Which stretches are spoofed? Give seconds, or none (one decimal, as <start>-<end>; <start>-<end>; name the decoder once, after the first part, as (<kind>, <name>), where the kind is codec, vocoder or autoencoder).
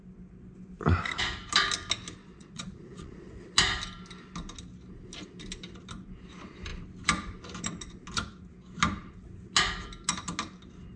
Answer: 2.2-3.3 (vocoder, Vocos)